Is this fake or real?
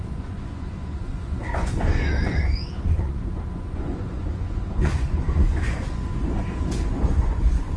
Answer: fake